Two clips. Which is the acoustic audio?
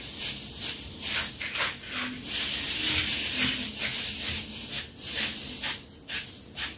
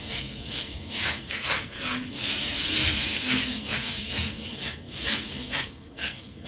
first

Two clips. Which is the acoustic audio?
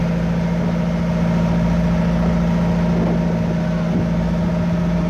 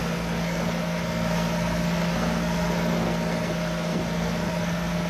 first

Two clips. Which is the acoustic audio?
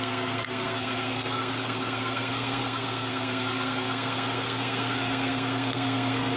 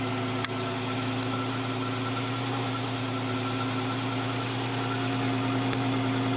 second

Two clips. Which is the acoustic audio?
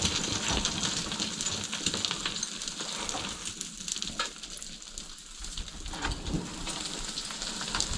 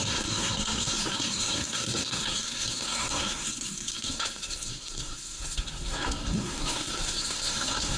first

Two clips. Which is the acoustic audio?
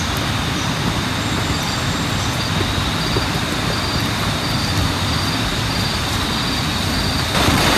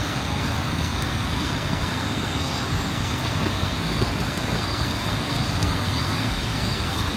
first